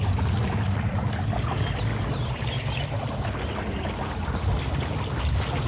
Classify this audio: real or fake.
real